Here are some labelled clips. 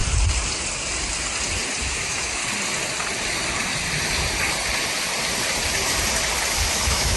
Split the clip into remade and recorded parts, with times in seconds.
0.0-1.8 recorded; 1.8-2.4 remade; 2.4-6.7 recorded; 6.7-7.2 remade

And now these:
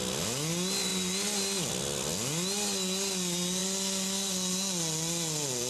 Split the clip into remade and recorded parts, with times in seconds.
0.0-5.7 recorded

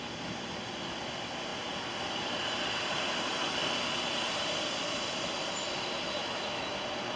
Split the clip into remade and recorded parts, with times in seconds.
0.0-6.2 recorded; 6.2-6.8 remade; 6.8-7.2 recorded

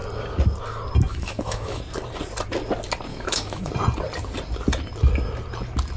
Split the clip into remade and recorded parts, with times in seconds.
0.0-1.1 recorded; 1.1-1.8 remade; 1.8-3.1 recorded; 3.1-3.7 remade; 3.7-6.0 recorded

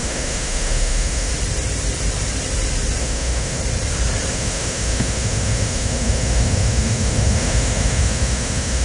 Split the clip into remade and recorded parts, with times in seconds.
0.0-1.3 remade; 1.3-3.0 recorded; 3.0-3.6 remade; 3.6-4.3 recorded; 4.3-8.8 remade